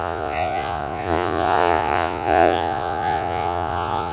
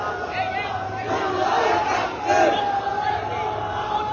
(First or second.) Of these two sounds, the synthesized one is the first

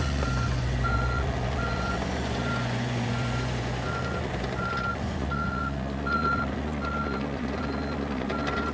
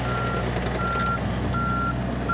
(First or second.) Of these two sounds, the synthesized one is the first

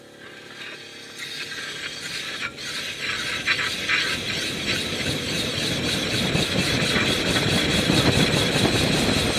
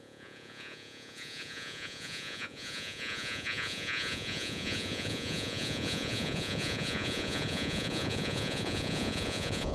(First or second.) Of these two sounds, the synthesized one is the second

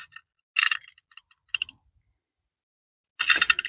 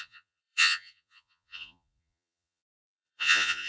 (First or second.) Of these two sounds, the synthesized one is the second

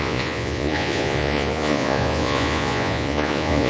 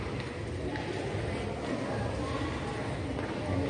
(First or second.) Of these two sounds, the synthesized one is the first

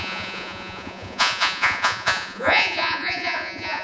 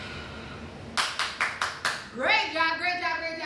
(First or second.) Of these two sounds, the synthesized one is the first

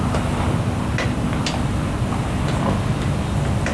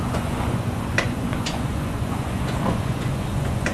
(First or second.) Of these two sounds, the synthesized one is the second